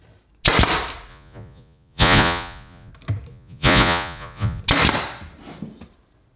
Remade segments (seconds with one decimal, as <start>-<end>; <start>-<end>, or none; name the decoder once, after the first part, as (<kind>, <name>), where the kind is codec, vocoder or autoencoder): 1.1-2.9 (vocoder, Vocos); 3.3-4.6